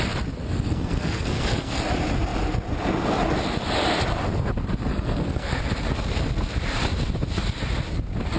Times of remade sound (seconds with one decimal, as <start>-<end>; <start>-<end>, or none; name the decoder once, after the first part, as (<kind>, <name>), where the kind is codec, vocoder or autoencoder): 0.4-1.8 (codec, SNAC); 4.9-5.6